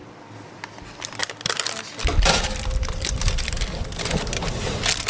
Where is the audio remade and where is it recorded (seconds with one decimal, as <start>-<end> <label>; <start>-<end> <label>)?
0.0-0.5 remade; 0.5-1.2 recorded; 1.2-4.3 remade; 4.3-5.1 recorded